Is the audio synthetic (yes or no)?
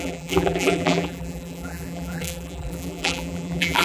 yes